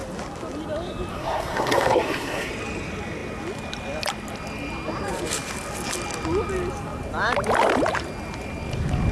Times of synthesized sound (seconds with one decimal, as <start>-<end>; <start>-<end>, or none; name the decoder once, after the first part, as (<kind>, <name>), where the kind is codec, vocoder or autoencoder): 1.1-2.5 (codec, SNAC)